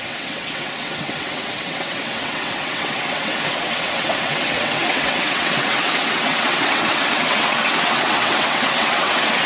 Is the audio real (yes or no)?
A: no